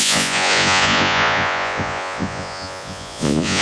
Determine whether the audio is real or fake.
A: fake